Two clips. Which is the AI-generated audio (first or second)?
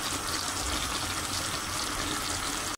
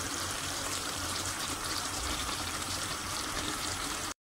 second